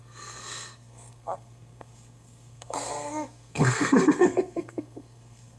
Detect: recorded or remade remade